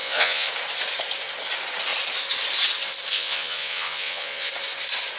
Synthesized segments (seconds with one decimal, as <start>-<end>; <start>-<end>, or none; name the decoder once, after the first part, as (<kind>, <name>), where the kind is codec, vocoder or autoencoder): 0.0-0.5 (vocoder, Vocos); 3.1-4.5